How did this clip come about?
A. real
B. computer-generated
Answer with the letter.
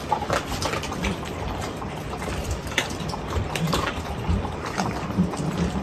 B